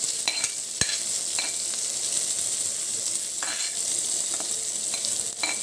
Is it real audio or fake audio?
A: real